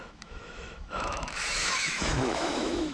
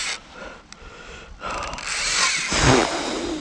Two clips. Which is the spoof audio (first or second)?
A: first